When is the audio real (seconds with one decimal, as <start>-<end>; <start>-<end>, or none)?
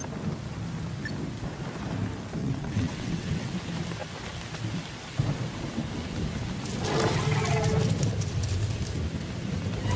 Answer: 0.0-2.4; 3.5-10.0